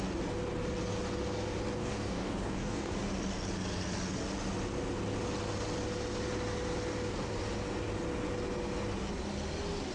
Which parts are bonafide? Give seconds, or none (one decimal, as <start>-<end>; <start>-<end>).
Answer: 0.0-1.8; 2.9-9.9